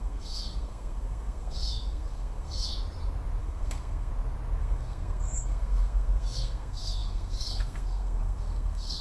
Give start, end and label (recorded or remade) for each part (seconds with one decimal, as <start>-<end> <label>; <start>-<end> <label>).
0.0-2.7 remade; 2.7-3.4 recorded; 3.4-4.1 remade; 4.1-4.6 recorded; 4.6-9.0 remade